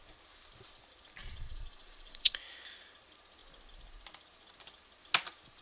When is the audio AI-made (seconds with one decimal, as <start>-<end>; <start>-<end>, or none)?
1.2-2.4

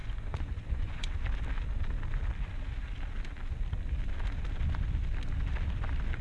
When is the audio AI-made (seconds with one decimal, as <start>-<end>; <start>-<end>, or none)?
0.0-1.1

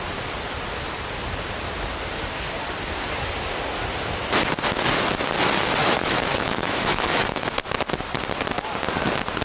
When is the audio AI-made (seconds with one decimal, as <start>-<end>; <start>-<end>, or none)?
5.8-7.5